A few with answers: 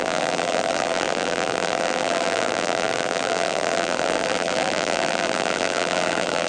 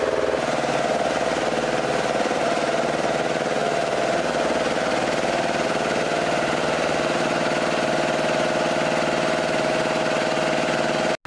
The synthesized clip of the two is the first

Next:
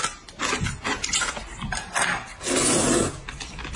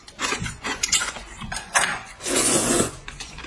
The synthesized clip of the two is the second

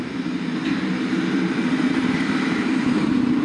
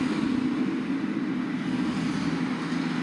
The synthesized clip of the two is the first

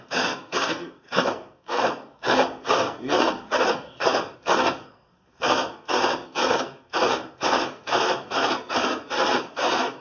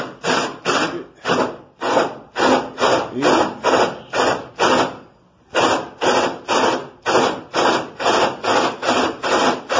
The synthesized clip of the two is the first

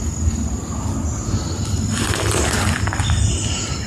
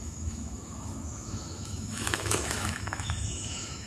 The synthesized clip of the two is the second